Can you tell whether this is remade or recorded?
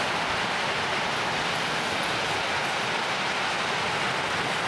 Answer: recorded